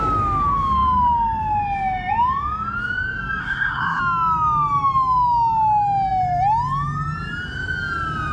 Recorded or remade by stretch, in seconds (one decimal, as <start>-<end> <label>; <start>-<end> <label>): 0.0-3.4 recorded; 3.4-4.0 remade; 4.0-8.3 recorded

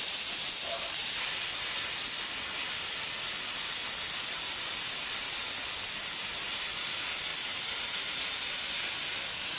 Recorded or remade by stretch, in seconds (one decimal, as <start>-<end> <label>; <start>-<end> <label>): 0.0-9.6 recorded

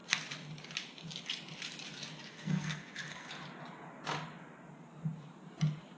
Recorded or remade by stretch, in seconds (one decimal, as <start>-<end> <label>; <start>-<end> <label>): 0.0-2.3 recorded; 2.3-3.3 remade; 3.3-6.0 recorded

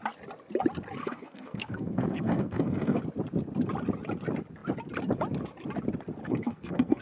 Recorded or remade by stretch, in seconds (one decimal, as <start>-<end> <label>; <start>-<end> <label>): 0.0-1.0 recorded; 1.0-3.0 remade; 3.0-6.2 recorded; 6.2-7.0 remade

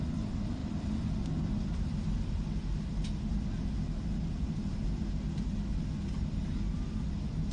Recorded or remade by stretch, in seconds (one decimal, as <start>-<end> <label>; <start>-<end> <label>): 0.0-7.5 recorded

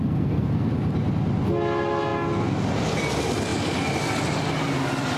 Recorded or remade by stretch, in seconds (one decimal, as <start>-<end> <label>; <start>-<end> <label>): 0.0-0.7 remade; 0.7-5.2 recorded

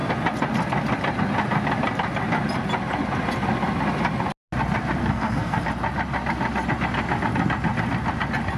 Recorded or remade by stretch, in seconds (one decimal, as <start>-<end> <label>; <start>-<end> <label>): 0.0-5.0 recorded; 5.0-5.6 remade; 5.6-8.6 recorded